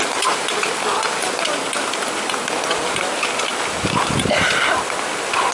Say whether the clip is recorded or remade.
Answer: recorded